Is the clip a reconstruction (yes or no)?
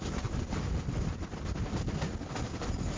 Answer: no